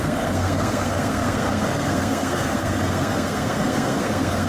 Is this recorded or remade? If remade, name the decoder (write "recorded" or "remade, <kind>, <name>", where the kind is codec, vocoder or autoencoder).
remade, codec, SNAC